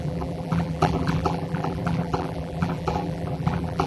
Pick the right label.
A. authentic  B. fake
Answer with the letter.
B